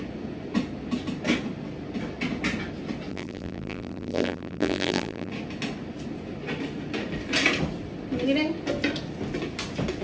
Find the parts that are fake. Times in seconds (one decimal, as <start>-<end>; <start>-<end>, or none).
3.1-5.3